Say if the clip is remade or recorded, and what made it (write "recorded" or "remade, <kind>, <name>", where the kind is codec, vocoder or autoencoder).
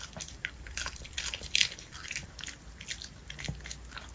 recorded